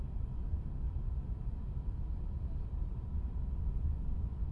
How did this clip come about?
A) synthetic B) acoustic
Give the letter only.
B